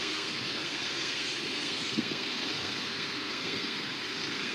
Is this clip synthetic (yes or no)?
yes